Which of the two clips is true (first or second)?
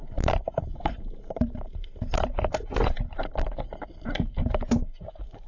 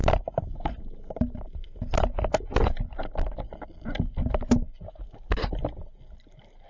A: second